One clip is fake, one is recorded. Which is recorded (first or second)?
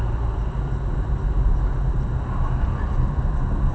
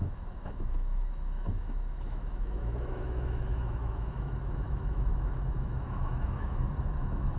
first